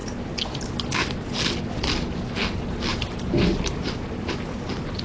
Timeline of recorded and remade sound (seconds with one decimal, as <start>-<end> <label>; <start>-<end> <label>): 0.0-5.0 recorded